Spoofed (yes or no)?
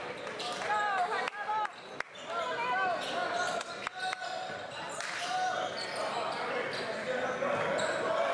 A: no